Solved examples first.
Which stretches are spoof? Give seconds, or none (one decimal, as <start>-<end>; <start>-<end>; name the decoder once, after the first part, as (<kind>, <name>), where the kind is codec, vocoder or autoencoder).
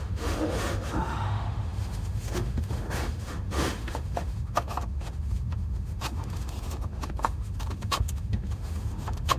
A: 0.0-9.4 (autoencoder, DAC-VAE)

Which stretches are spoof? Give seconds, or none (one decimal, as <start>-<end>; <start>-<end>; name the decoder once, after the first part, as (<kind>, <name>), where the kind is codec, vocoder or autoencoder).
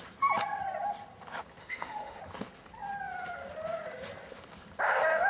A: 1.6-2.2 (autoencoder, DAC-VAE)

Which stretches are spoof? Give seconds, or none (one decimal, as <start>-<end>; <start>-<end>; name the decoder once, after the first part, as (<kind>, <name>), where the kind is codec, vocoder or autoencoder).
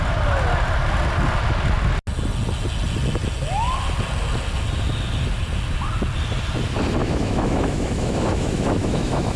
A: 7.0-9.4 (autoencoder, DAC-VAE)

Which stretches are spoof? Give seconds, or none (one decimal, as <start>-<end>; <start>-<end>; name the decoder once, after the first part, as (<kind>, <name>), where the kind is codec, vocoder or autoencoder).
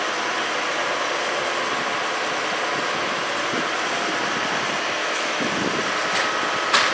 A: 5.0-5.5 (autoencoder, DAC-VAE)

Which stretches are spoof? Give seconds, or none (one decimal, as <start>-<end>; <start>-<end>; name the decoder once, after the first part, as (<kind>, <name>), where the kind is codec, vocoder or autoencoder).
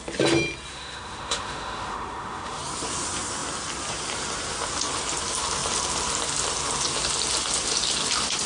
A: 0.7-2.6 (autoencoder, DAC-VAE)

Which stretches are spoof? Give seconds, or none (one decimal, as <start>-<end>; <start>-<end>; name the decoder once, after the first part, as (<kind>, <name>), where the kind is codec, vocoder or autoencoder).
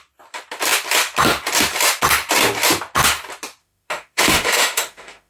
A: 3.6-5.3 (autoencoder, DAC-VAE)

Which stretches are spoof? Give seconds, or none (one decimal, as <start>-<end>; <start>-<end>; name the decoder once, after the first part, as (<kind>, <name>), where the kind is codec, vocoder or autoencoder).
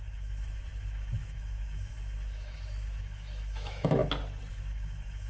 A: 0.0-4.0 (autoencoder, DAC-VAE); 4.5-5.3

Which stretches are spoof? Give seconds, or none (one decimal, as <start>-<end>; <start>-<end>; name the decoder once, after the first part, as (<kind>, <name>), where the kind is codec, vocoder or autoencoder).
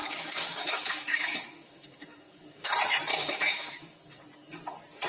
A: 0.0-2.7 (autoencoder, DAC-VAE); 3.1-4.2